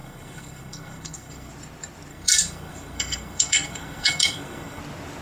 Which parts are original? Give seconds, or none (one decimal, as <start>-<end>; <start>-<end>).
1.5-2.1; 4.8-5.2